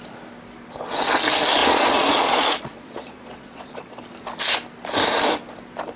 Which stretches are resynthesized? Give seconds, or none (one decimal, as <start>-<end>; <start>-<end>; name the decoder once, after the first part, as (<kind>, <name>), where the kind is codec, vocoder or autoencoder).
1.6-4.0 (vocoder, Vocos)